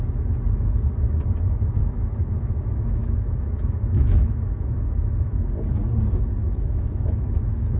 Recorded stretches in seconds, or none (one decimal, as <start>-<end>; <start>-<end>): 0.0-1.8; 5.5-6.4